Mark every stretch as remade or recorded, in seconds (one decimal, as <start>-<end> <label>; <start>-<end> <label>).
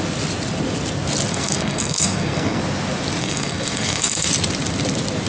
0.0-1.3 recorded; 1.3-2.6 remade; 2.6-3.2 recorded; 3.2-4.3 remade; 4.3-5.3 recorded